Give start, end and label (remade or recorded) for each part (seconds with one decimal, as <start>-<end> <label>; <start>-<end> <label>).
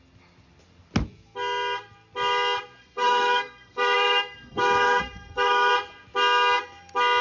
0.0-2.8 recorded; 2.8-5.7 remade; 5.7-7.2 recorded